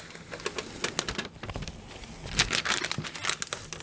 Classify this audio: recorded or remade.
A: recorded